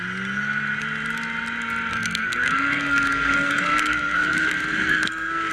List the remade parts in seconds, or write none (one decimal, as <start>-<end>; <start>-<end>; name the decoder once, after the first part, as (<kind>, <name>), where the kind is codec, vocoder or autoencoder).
1.9-5.5 (codec, SNAC)